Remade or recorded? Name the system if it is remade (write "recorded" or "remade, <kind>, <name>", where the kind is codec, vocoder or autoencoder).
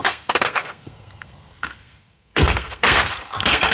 remade, codec, SNAC